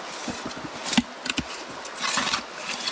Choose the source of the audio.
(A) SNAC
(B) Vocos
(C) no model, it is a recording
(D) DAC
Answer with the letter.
C